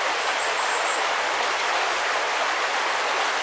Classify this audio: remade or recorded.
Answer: recorded